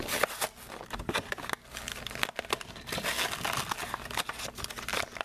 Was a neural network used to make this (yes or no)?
no